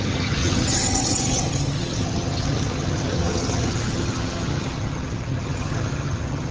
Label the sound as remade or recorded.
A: remade